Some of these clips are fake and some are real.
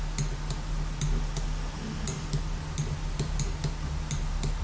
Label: real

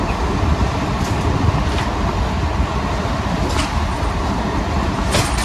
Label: real